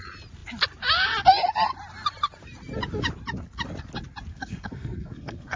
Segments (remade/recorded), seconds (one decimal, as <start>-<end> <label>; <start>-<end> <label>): 0.0-4.3 recorded; 4.3-5.6 remade